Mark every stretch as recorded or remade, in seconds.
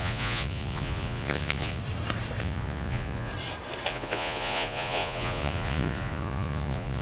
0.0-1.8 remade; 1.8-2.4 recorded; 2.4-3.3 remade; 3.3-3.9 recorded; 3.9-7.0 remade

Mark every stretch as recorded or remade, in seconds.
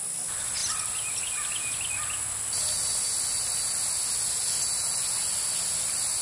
0.0-6.2 recorded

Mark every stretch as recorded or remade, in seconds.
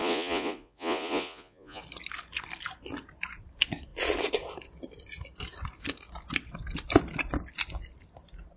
0.0-1.8 remade; 1.8-8.6 recorded